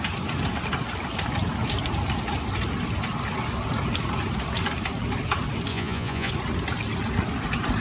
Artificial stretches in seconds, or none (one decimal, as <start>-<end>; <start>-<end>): 5.7-6.3